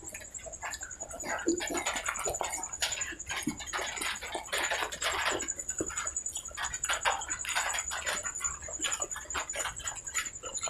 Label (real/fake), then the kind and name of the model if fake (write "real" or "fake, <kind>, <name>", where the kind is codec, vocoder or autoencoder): real